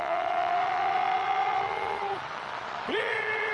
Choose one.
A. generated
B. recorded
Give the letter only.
A